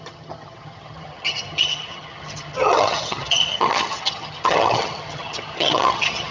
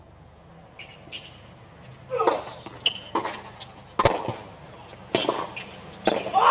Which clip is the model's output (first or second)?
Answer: first